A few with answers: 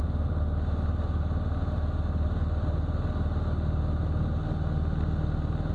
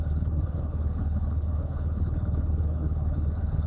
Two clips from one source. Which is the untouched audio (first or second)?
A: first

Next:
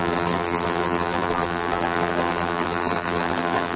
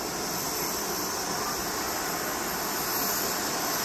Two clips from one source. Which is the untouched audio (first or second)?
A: second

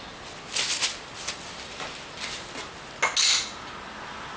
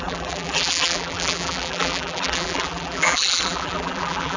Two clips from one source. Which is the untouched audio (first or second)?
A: first